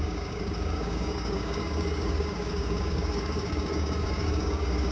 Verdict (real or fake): fake